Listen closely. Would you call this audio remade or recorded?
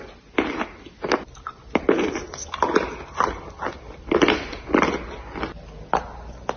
recorded